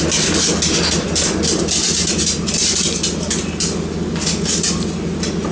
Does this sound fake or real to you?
real